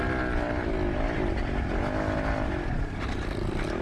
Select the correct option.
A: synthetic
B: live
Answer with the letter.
B